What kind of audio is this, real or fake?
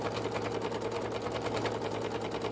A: fake